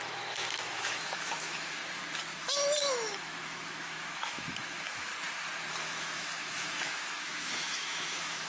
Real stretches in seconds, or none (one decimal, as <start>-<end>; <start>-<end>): 1.8-2.4; 5.1-5.7